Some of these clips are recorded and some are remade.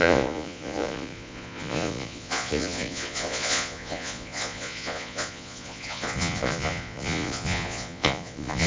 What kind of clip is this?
remade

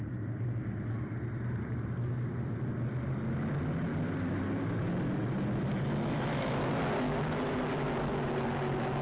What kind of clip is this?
recorded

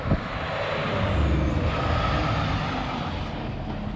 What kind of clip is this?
recorded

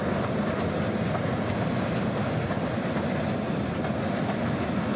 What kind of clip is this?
recorded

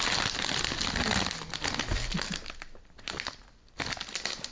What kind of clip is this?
recorded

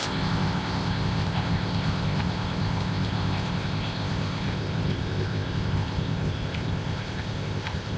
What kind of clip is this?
remade